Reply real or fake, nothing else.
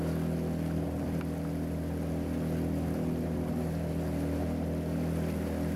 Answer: real